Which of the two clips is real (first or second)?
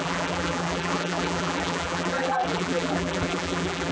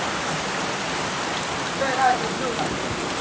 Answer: second